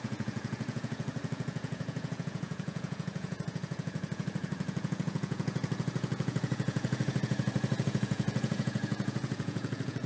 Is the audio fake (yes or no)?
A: yes